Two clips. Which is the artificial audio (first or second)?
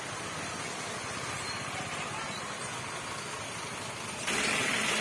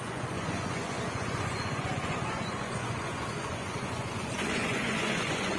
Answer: second